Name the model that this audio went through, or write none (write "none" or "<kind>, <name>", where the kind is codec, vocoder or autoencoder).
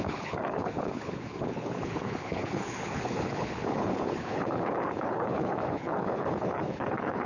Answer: codec, HILCodec